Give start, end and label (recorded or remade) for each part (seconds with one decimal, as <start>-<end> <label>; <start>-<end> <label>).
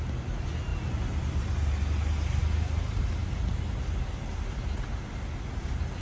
0.0-0.7 recorded; 0.7-1.5 remade; 1.5-6.0 recorded